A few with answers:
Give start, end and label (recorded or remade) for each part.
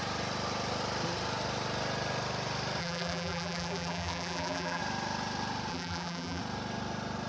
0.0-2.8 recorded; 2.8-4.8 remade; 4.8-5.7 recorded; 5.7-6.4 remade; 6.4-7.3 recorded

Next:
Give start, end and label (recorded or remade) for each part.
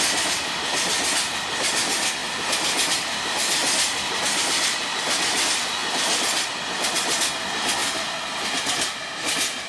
0.0-2.2 recorded; 2.2-4.4 remade; 4.4-7.8 recorded; 7.8-8.6 remade; 8.6-9.7 recorded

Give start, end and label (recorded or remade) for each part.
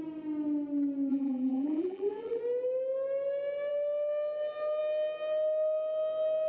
0.0-1.1 recorded; 1.1-2.4 remade; 2.4-6.5 recorded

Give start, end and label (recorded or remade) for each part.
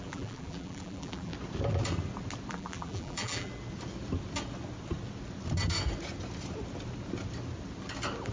0.0-1.3 remade; 1.3-2.5 recorded; 2.5-3.5 remade; 3.5-8.3 recorded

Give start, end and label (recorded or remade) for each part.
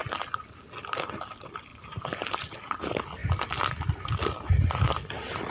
0.0-1.1 recorded; 1.1-1.7 remade; 1.7-2.3 recorded; 2.3-3.2 remade; 3.2-4.0 recorded; 4.0-5.5 remade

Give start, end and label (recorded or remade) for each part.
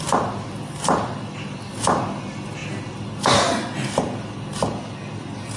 0.0-5.6 recorded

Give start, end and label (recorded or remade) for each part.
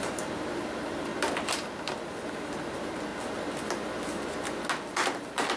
0.0-1.1 remade; 1.1-2.3 recorded; 2.3-3.1 remade; 3.1-5.6 recorded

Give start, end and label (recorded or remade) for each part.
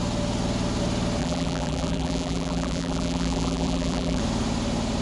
0.0-1.2 recorded; 1.2-4.2 remade; 4.2-5.0 recorded